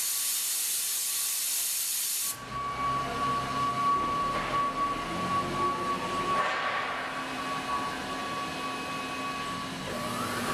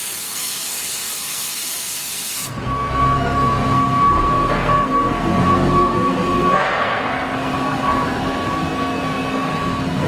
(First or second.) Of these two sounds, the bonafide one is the first